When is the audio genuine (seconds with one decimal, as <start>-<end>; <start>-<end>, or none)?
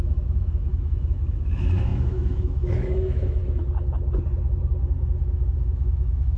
3.4-5.2